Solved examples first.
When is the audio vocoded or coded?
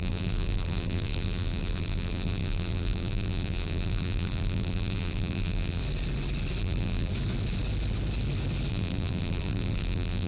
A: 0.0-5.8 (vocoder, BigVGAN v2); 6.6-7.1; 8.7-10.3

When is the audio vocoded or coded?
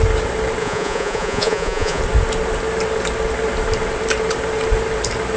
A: 0.6-2.0 (vocoder, Vocos)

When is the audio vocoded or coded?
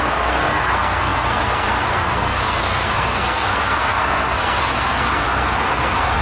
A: 0.0-6.2 (codec, SNAC)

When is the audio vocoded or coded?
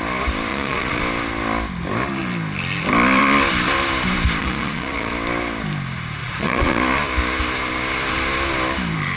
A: 0.5-1.0 (vocoder, Vocos); 4.4-5.1; 6.2-6.8